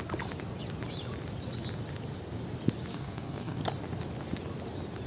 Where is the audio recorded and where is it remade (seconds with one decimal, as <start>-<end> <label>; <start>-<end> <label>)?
0.0-2.9 recorded; 2.9-3.6 remade; 3.6-5.1 recorded